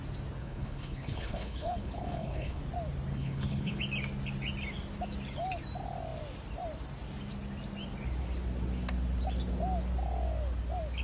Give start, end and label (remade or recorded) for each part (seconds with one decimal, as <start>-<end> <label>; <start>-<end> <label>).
0.0-0.4 recorded; 0.4-2.6 remade; 2.6-3.1 recorded; 3.1-3.8 remade; 3.8-11.0 recorded